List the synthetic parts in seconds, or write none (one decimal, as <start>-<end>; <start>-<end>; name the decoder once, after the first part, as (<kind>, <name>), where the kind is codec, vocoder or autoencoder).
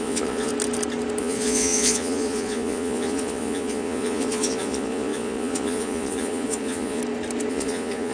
0.0-0.5 (vocoder, Vocos); 1.2-7.0; 7.5-8.1